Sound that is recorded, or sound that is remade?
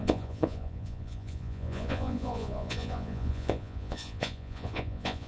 remade